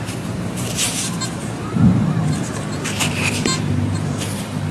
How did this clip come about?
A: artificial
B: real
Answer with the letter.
A